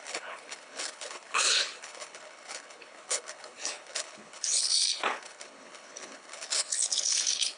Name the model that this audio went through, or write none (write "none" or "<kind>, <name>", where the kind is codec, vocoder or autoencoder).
codec, HILCodec